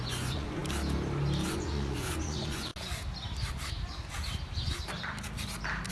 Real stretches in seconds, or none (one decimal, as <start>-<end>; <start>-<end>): 0.6-1.5; 2.7-5.9